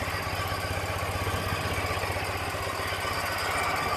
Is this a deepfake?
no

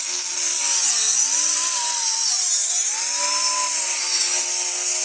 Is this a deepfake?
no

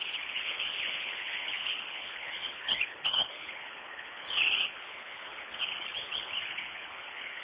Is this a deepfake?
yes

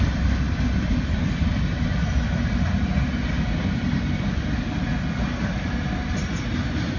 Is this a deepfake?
no